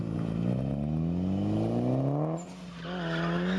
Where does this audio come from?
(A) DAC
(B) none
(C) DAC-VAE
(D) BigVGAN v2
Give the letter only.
B